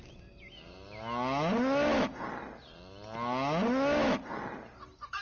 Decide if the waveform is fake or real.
real